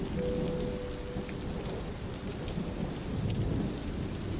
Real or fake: real